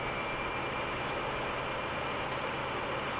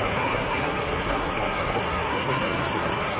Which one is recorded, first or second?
first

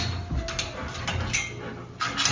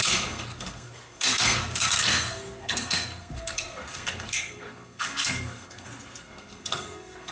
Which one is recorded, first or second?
first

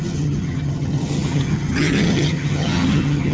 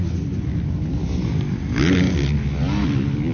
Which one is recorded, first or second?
second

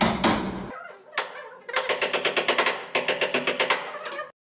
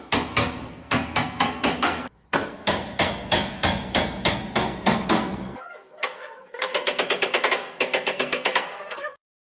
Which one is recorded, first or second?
first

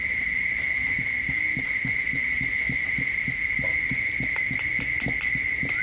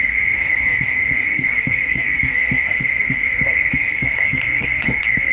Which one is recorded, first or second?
first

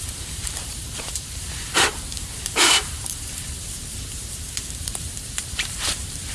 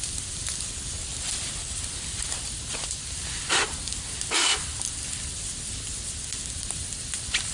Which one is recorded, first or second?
second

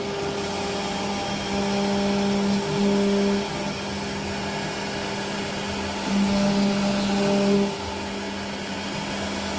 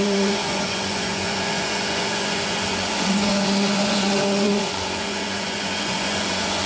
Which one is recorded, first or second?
first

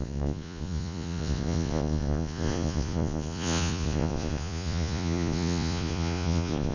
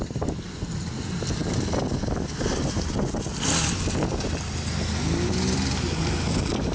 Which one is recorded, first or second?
second